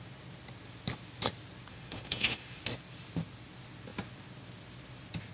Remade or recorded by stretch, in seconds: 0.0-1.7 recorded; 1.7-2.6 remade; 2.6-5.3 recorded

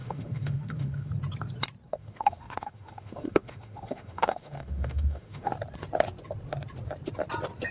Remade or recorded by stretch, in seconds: 0.0-1.1 remade; 1.1-1.9 recorded; 1.9-5.5 remade; 5.5-7.7 recorded

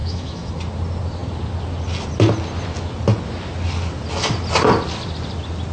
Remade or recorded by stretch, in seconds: 0.0-0.5 remade; 0.5-5.7 recorded